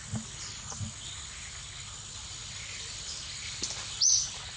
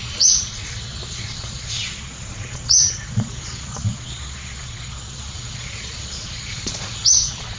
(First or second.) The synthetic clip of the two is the second